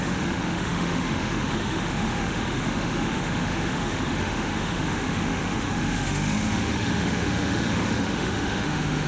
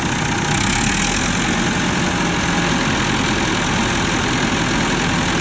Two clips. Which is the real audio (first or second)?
second